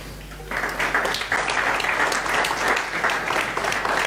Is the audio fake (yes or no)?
no